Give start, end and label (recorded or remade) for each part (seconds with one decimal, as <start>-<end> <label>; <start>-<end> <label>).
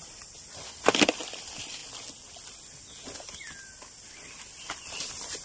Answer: 0.0-1.8 remade; 1.8-5.0 recorded; 5.0-5.4 remade